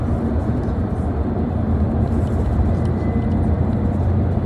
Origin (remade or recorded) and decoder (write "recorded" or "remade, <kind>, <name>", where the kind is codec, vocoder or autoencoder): recorded